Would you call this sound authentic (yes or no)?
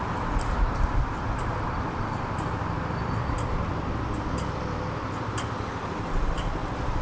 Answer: yes